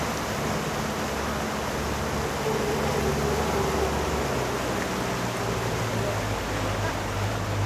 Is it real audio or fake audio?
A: real